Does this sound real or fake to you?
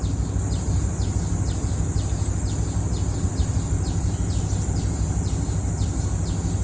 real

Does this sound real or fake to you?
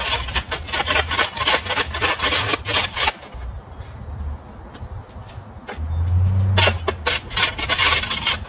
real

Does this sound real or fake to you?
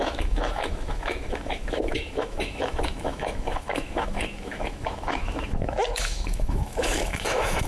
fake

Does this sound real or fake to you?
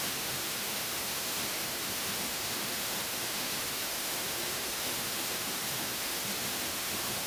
fake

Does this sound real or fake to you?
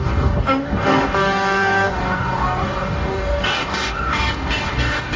fake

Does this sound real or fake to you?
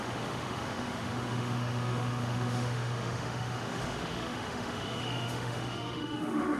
fake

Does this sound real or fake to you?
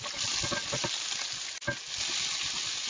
real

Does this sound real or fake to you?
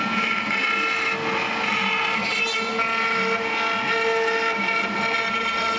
real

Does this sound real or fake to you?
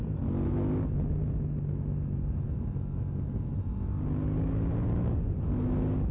real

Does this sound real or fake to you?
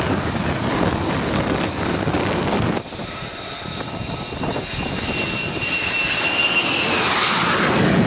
real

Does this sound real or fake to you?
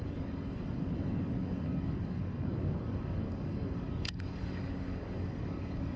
fake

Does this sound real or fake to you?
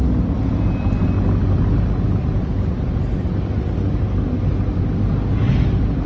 real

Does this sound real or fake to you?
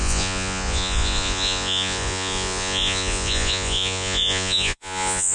fake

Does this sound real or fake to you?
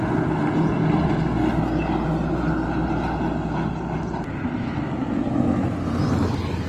real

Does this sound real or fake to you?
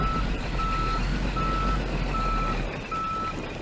real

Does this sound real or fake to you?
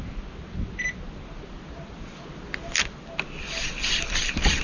real